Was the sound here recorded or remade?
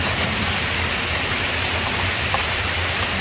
remade